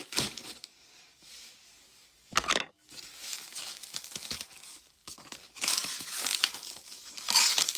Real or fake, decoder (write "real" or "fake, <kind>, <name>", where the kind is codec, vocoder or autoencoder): fake, codec, DAC